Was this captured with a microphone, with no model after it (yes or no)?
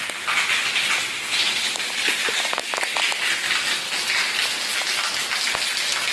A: yes